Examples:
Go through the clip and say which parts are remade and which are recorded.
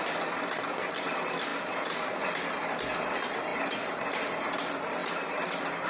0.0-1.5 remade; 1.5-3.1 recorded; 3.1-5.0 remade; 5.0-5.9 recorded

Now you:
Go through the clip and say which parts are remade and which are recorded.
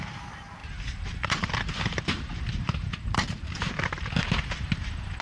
0.0-4.2 remade; 4.2-5.2 recorded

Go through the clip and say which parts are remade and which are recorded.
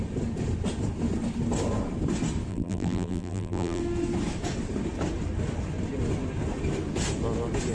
0.0-2.5 recorded; 2.5-3.8 remade; 3.8-7.7 recorded